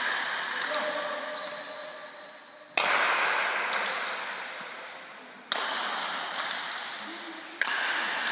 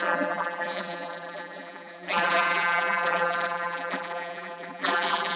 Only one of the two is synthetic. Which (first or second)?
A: second